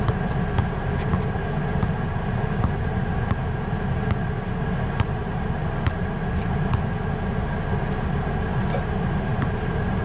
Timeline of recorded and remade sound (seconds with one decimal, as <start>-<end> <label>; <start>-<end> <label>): 0.0-9.3 recorded; 9.3-10.0 remade